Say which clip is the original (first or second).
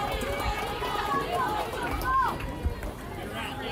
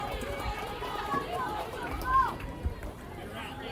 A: first